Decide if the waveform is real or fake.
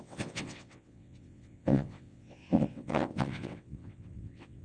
fake